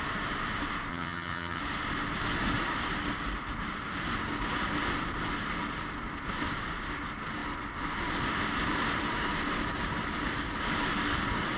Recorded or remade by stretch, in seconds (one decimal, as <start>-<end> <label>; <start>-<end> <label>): 0.0-0.9 recorded; 0.9-1.6 remade; 1.6-11.6 recorded